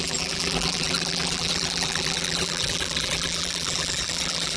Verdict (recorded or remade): remade